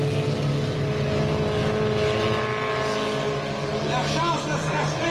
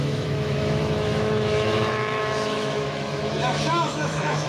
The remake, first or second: second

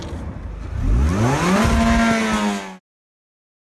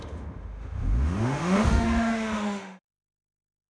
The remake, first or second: second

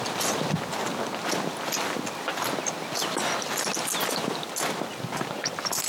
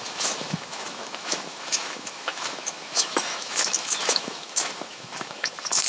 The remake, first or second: second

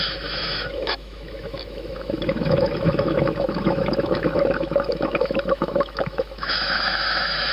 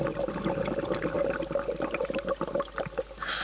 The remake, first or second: first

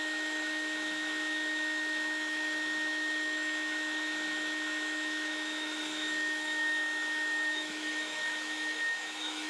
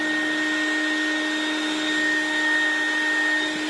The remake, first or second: first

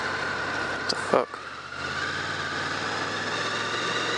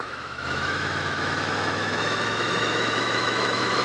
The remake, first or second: second